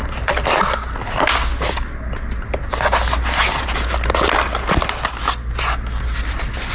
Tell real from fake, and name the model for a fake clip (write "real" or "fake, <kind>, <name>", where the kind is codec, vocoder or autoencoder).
real